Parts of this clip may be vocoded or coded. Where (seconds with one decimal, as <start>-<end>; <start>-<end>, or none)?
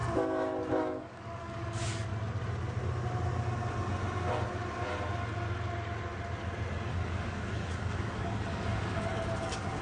0.8-2.1; 6.9-9.8